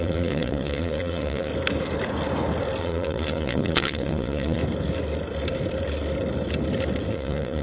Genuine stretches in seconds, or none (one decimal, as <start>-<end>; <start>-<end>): 1.5-2.8; 4.6-7.1